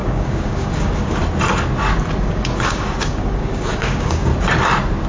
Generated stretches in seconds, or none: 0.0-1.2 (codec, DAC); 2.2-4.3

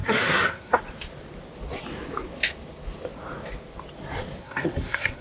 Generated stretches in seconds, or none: 0.0-0.8 (codec, SNAC); 4.4-5.2

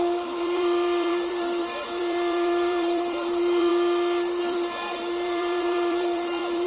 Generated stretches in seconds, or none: 0.0-3.7 (vocoder, BigVGAN v2); 4.4-6.7

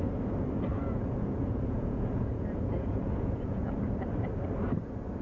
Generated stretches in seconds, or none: 0.7-3.8 (vocoder, Vocos)

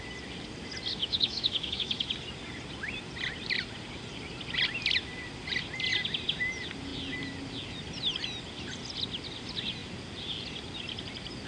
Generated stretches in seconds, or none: 0.9-2.1 (autoencoder, DAC-VAE)